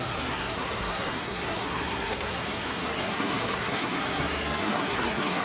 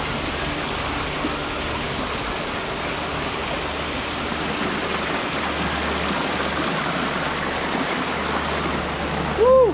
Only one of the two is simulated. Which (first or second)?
first